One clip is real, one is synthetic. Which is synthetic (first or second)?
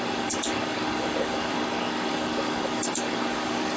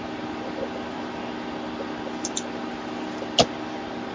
first